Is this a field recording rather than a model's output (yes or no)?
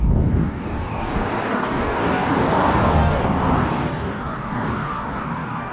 no